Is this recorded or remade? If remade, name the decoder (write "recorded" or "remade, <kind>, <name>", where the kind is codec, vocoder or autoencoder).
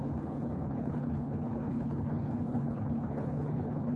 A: remade, codec, HILCodec